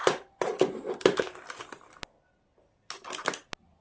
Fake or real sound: real